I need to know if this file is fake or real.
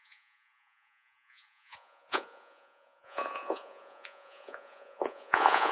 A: fake